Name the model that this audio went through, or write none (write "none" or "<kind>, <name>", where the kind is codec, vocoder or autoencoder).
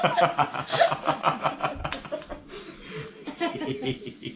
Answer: none